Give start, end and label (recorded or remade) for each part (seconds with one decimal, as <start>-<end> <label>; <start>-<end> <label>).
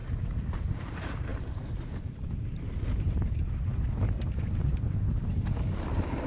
0.0-6.3 remade